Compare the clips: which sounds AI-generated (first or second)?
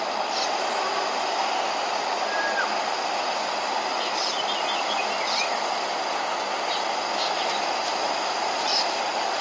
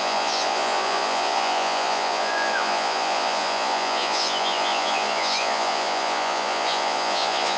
second